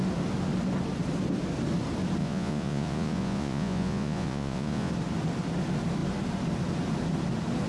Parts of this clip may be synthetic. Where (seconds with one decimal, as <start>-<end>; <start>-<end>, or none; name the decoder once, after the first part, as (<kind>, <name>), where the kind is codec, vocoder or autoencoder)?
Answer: 2.2-4.9 (vocoder, Vocos)